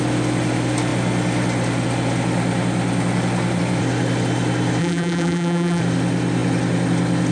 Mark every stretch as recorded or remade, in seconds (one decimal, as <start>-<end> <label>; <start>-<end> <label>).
0.0-4.8 recorded; 4.8-5.8 remade; 5.8-7.3 recorded